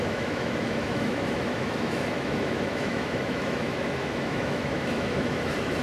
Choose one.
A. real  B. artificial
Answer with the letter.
B